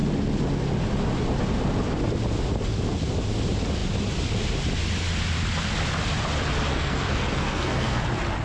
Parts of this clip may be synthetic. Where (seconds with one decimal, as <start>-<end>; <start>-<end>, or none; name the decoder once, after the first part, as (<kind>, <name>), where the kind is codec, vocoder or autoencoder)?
6.7-8.0 (codec, SNAC)